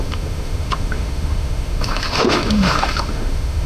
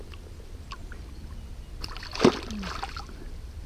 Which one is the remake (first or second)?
first